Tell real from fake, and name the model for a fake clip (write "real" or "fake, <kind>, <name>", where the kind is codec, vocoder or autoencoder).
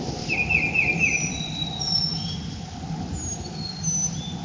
real